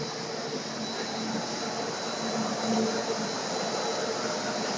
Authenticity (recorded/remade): recorded